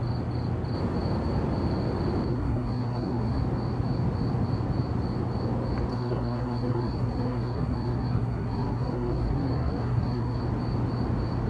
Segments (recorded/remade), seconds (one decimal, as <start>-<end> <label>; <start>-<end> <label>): 0.0-2.3 recorded; 2.3-3.4 remade; 3.4-5.9 recorded; 5.9-10.4 remade; 10.4-11.5 recorded

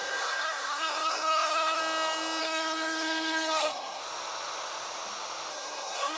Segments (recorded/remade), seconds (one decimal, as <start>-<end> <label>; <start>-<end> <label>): 0.0-1.8 remade; 1.8-2.4 recorded; 2.4-4.0 remade; 4.0-5.5 recorded; 5.5-6.2 remade

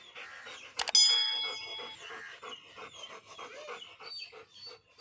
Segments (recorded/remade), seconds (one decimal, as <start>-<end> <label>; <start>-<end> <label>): 0.0-5.0 recorded

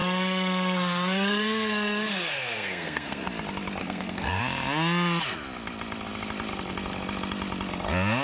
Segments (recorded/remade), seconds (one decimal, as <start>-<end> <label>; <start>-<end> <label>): 0.0-3.3 remade; 3.3-3.8 recorded; 3.8-4.4 remade; 4.4-8.2 recorded

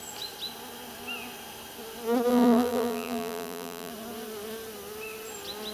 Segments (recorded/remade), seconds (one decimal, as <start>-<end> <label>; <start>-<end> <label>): 0.0-2.3 recorded; 2.3-3.9 remade; 3.9-5.7 recorded

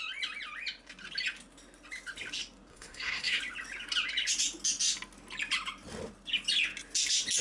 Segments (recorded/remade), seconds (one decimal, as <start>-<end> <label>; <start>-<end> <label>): 0.0-2.7 recorded; 2.7-3.4 remade; 3.4-7.4 recorded

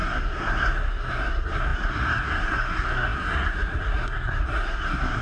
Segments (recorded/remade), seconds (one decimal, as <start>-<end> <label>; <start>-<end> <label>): 0.0-5.2 remade